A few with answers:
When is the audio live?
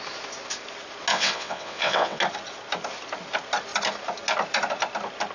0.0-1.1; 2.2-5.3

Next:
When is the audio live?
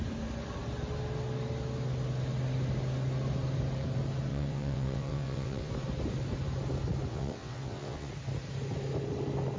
0.0-4.3; 5.7-7.1; 8.1-9.6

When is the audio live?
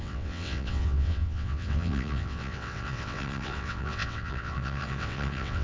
none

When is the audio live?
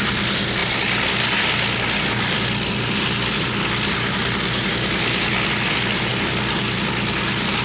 0.0-7.6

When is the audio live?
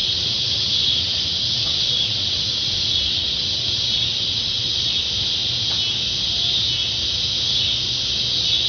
4.9-8.7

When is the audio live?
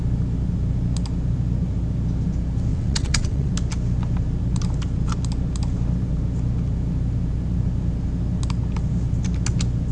0.0-2.7; 3.5-9.9